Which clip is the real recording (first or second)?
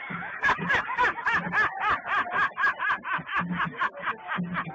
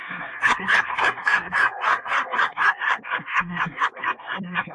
first